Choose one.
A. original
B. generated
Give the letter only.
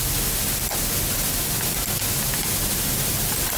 A